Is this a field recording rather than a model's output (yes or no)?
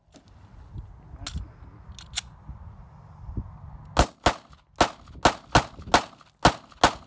yes